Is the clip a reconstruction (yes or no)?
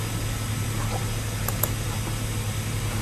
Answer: no